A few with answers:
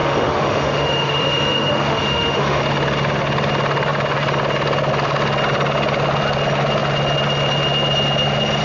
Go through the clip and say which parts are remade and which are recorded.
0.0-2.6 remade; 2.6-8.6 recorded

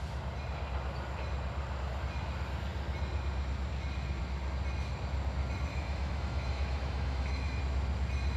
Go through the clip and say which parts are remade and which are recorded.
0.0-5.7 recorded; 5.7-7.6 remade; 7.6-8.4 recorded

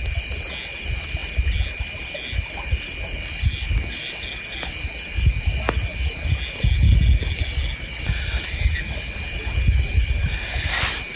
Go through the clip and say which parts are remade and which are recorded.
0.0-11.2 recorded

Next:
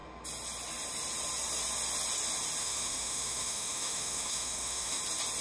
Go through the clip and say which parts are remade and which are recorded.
0.0-2.6 recorded; 2.6-5.0 remade; 5.0-5.4 recorded

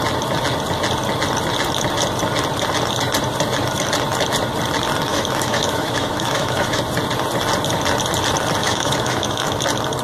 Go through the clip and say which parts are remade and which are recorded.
0.0-5.1 recorded; 5.1-6.8 remade; 6.8-8.6 recorded; 8.6-9.6 remade; 9.6-10.0 recorded

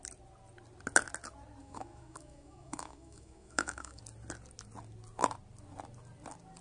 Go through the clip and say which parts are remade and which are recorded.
0.0-1.6 recorded; 1.6-4.0 remade; 4.0-6.6 recorded

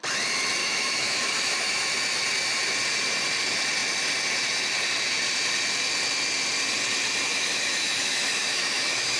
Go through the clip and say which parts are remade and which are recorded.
0.0-0.6 recorded; 0.6-1.8 remade; 1.8-7.3 recorded; 7.3-9.2 remade

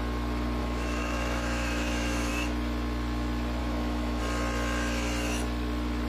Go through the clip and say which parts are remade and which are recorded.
0.0-0.6 recorded; 0.6-2.3 remade; 2.3-3.6 recorded; 3.6-4.2 remade; 4.2-6.1 recorded